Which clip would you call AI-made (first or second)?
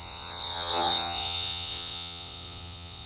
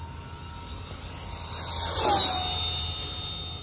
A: first